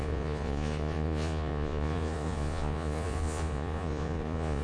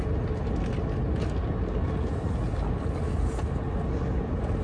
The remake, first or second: first